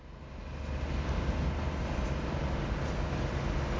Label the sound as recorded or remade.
recorded